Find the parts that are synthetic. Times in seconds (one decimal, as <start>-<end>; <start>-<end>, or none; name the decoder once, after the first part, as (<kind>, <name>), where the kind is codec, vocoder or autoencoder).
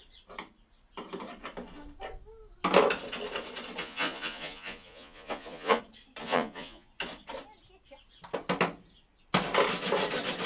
3.8-5.8 (vocoder, Vocos); 6.2-6.9